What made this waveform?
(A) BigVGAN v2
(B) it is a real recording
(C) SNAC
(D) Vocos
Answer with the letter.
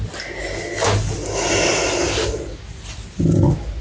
B